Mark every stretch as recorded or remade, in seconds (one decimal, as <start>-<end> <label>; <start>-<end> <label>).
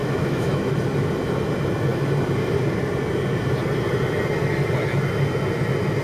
0.0-0.7 remade; 0.7-6.0 recorded